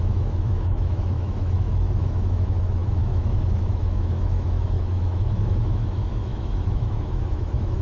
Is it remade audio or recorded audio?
remade